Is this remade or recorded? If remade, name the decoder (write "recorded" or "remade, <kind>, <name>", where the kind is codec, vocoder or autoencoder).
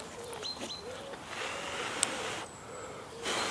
recorded